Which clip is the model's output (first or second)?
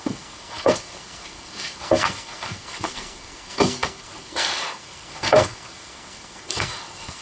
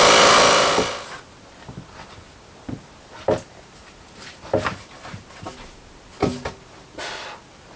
first